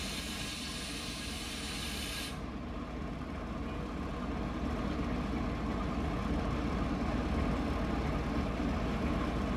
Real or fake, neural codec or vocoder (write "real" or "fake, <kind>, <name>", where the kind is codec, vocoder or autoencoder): real